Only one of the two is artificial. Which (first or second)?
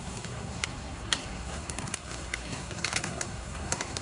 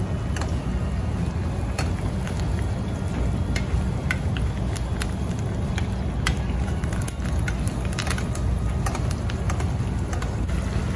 first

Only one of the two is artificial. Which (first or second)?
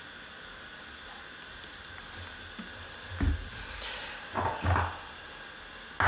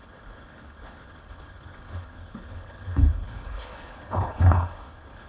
second